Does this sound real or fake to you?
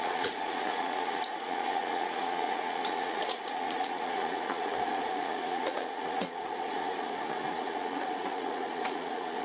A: fake